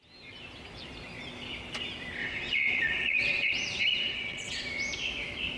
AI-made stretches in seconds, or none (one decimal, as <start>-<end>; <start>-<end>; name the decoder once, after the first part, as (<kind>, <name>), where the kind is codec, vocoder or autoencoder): 2.2-3.5 (vocoder, WaveNeXt); 3.9-4.6